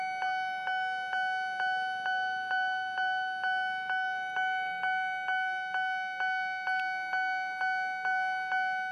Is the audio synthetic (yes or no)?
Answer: no